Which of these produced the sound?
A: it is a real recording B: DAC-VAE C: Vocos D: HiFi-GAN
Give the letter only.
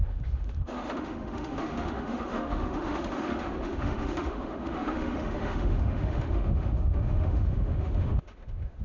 B